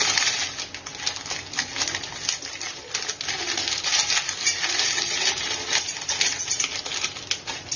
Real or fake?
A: real